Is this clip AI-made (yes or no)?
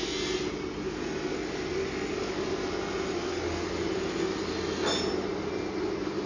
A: no